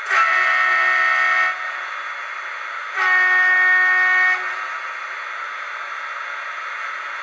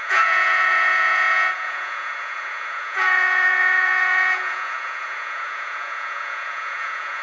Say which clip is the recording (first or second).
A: first